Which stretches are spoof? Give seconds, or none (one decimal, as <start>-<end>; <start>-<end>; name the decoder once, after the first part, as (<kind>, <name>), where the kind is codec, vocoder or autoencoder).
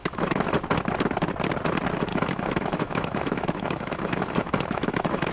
0.0-0.5 (autoencoder, DAC-VAE); 2.1-5.3